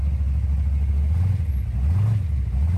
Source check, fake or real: real